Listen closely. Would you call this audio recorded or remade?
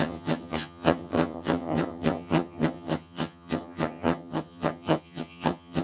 remade